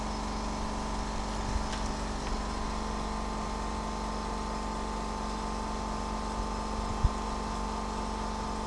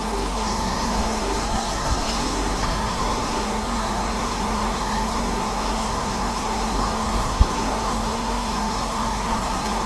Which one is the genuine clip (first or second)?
first